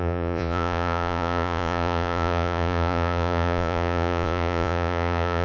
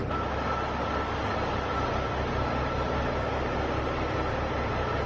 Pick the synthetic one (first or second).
first